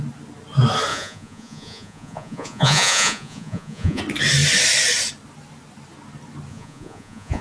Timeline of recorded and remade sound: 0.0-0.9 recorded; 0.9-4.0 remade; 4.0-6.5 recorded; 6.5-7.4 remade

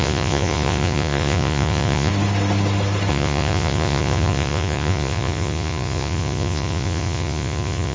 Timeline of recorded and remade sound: 0.0-2.1 remade; 2.1-3.1 recorded; 3.1-7.9 remade